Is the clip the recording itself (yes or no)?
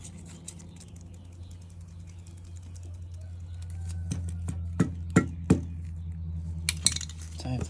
yes